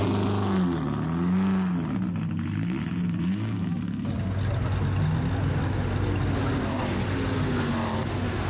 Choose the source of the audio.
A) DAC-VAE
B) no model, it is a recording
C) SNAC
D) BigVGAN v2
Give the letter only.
B